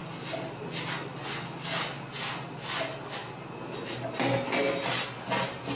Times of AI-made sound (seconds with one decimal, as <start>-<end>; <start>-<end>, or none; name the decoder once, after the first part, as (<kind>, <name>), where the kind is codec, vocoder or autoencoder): none